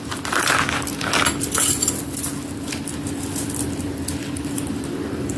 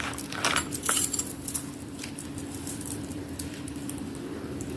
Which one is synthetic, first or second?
second